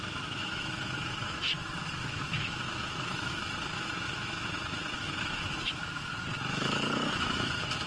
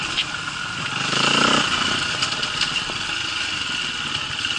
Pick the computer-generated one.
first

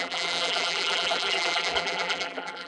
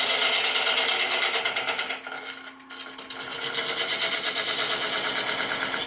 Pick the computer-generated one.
first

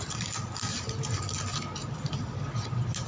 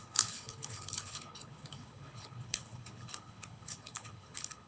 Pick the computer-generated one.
second